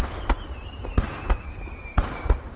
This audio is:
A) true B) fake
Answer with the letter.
A